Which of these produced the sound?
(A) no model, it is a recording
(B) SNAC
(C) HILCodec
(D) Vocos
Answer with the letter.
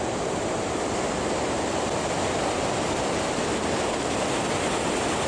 A